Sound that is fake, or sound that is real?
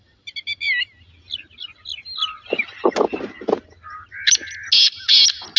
real